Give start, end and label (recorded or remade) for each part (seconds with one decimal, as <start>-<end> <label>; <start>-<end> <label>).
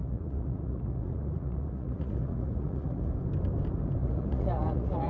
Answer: 0.0-3.1 remade; 3.1-4.0 recorded; 4.0-5.1 remade